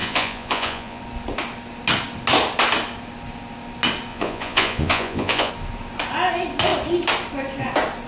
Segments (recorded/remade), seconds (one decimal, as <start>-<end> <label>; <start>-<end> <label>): 0.0-1.0 remade; 1.0-4.1 recorded; 4.1-5.5 remade; 5.5-8.1 recorded